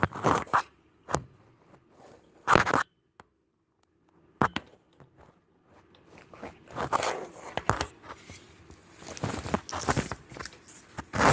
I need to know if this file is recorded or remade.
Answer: recorded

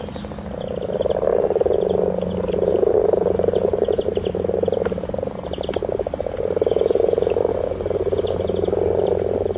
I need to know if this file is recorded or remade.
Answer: recorded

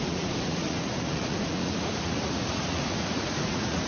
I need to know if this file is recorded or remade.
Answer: remade